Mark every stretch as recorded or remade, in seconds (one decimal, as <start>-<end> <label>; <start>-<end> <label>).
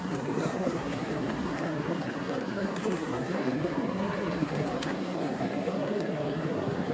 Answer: 0.0-6.9 remade